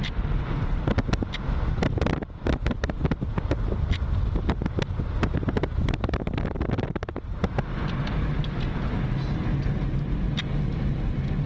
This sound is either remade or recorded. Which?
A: recorded